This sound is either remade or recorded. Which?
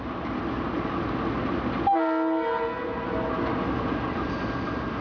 recorded